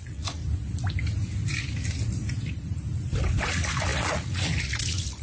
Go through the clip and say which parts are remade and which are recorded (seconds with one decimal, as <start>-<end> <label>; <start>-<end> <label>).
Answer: 0.0-0.4 remade; 0.4-3.5 recorded; 3.5-5.2 remade

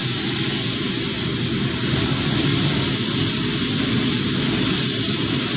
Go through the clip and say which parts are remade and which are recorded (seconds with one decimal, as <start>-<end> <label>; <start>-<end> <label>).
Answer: 0.0-5.6 recorded